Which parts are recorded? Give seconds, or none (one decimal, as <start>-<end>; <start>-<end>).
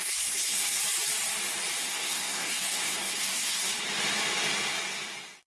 0.8-1.8; 3.7-5.6